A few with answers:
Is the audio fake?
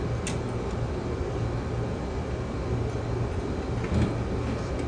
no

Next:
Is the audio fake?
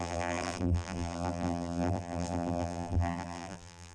yes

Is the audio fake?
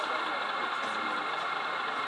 no